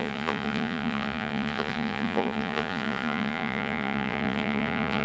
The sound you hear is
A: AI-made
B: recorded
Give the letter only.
A